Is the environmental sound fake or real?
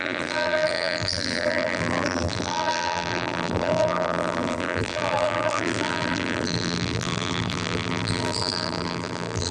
fake